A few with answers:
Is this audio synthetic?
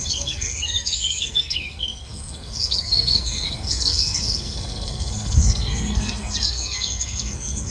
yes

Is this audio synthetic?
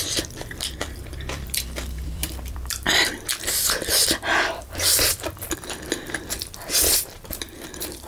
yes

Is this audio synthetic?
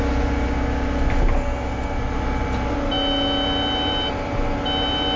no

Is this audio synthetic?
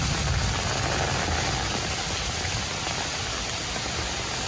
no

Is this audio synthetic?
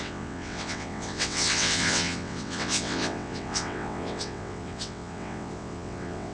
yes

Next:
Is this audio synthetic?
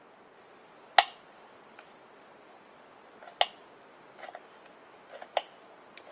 no